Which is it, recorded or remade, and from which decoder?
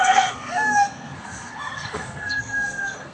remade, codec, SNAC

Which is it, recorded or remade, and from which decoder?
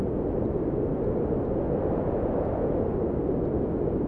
recorded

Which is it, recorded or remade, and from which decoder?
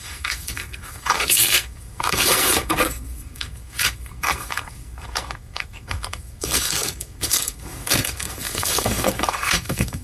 remade, codec, SNAC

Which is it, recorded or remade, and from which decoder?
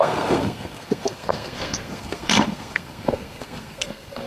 remade, codec, SNAC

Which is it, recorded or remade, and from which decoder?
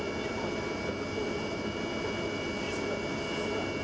recorded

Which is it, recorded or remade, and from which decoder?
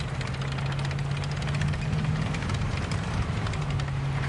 recorded